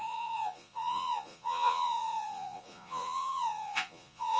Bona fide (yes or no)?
no